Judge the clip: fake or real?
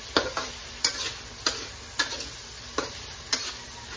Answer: real